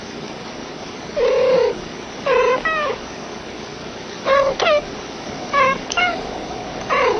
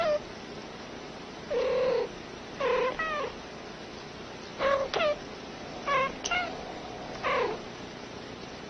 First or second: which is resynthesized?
first